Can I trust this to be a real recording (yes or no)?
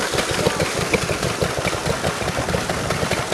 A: yes